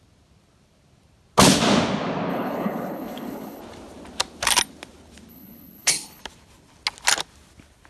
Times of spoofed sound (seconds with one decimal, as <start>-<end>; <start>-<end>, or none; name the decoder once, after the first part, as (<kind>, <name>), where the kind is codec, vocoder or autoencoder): 2.3-3.6 (codec, HILCodec); 5.3-6.2